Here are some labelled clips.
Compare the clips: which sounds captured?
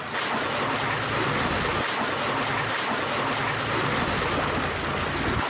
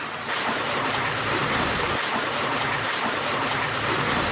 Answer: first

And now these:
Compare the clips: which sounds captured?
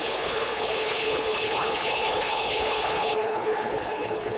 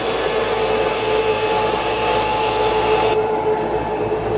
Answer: second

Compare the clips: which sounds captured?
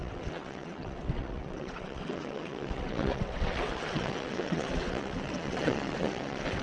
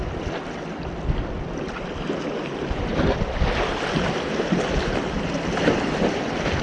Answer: second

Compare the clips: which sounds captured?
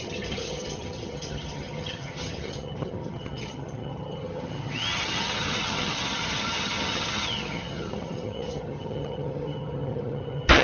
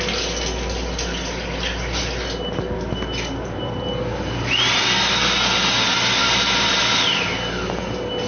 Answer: second